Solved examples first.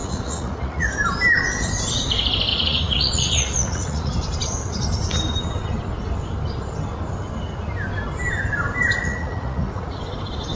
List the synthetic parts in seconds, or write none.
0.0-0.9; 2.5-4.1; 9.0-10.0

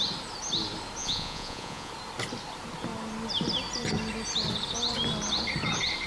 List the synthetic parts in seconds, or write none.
1.0-1.9